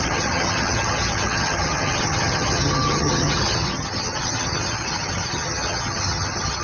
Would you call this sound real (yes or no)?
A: no